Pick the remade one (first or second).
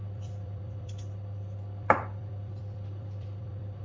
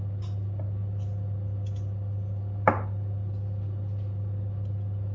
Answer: first